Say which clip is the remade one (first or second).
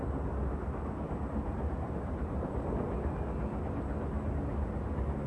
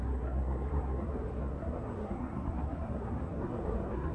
second